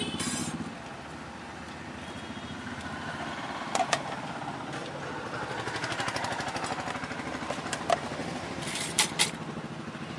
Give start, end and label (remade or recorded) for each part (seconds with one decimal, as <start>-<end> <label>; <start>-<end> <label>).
0.0-8.2 recorded; 8.2-9.2 remade; 9.2-10.2 recorded